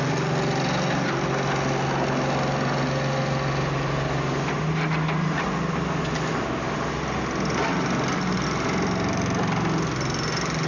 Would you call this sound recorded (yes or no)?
yes